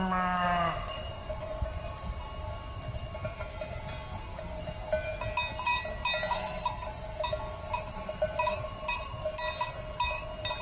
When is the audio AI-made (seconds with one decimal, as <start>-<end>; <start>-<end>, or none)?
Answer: 1.1-1.8